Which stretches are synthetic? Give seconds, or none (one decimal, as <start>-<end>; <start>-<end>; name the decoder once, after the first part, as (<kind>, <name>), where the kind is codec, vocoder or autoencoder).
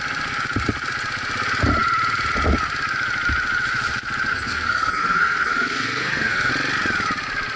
4.3-6.5 (codec, SNAC)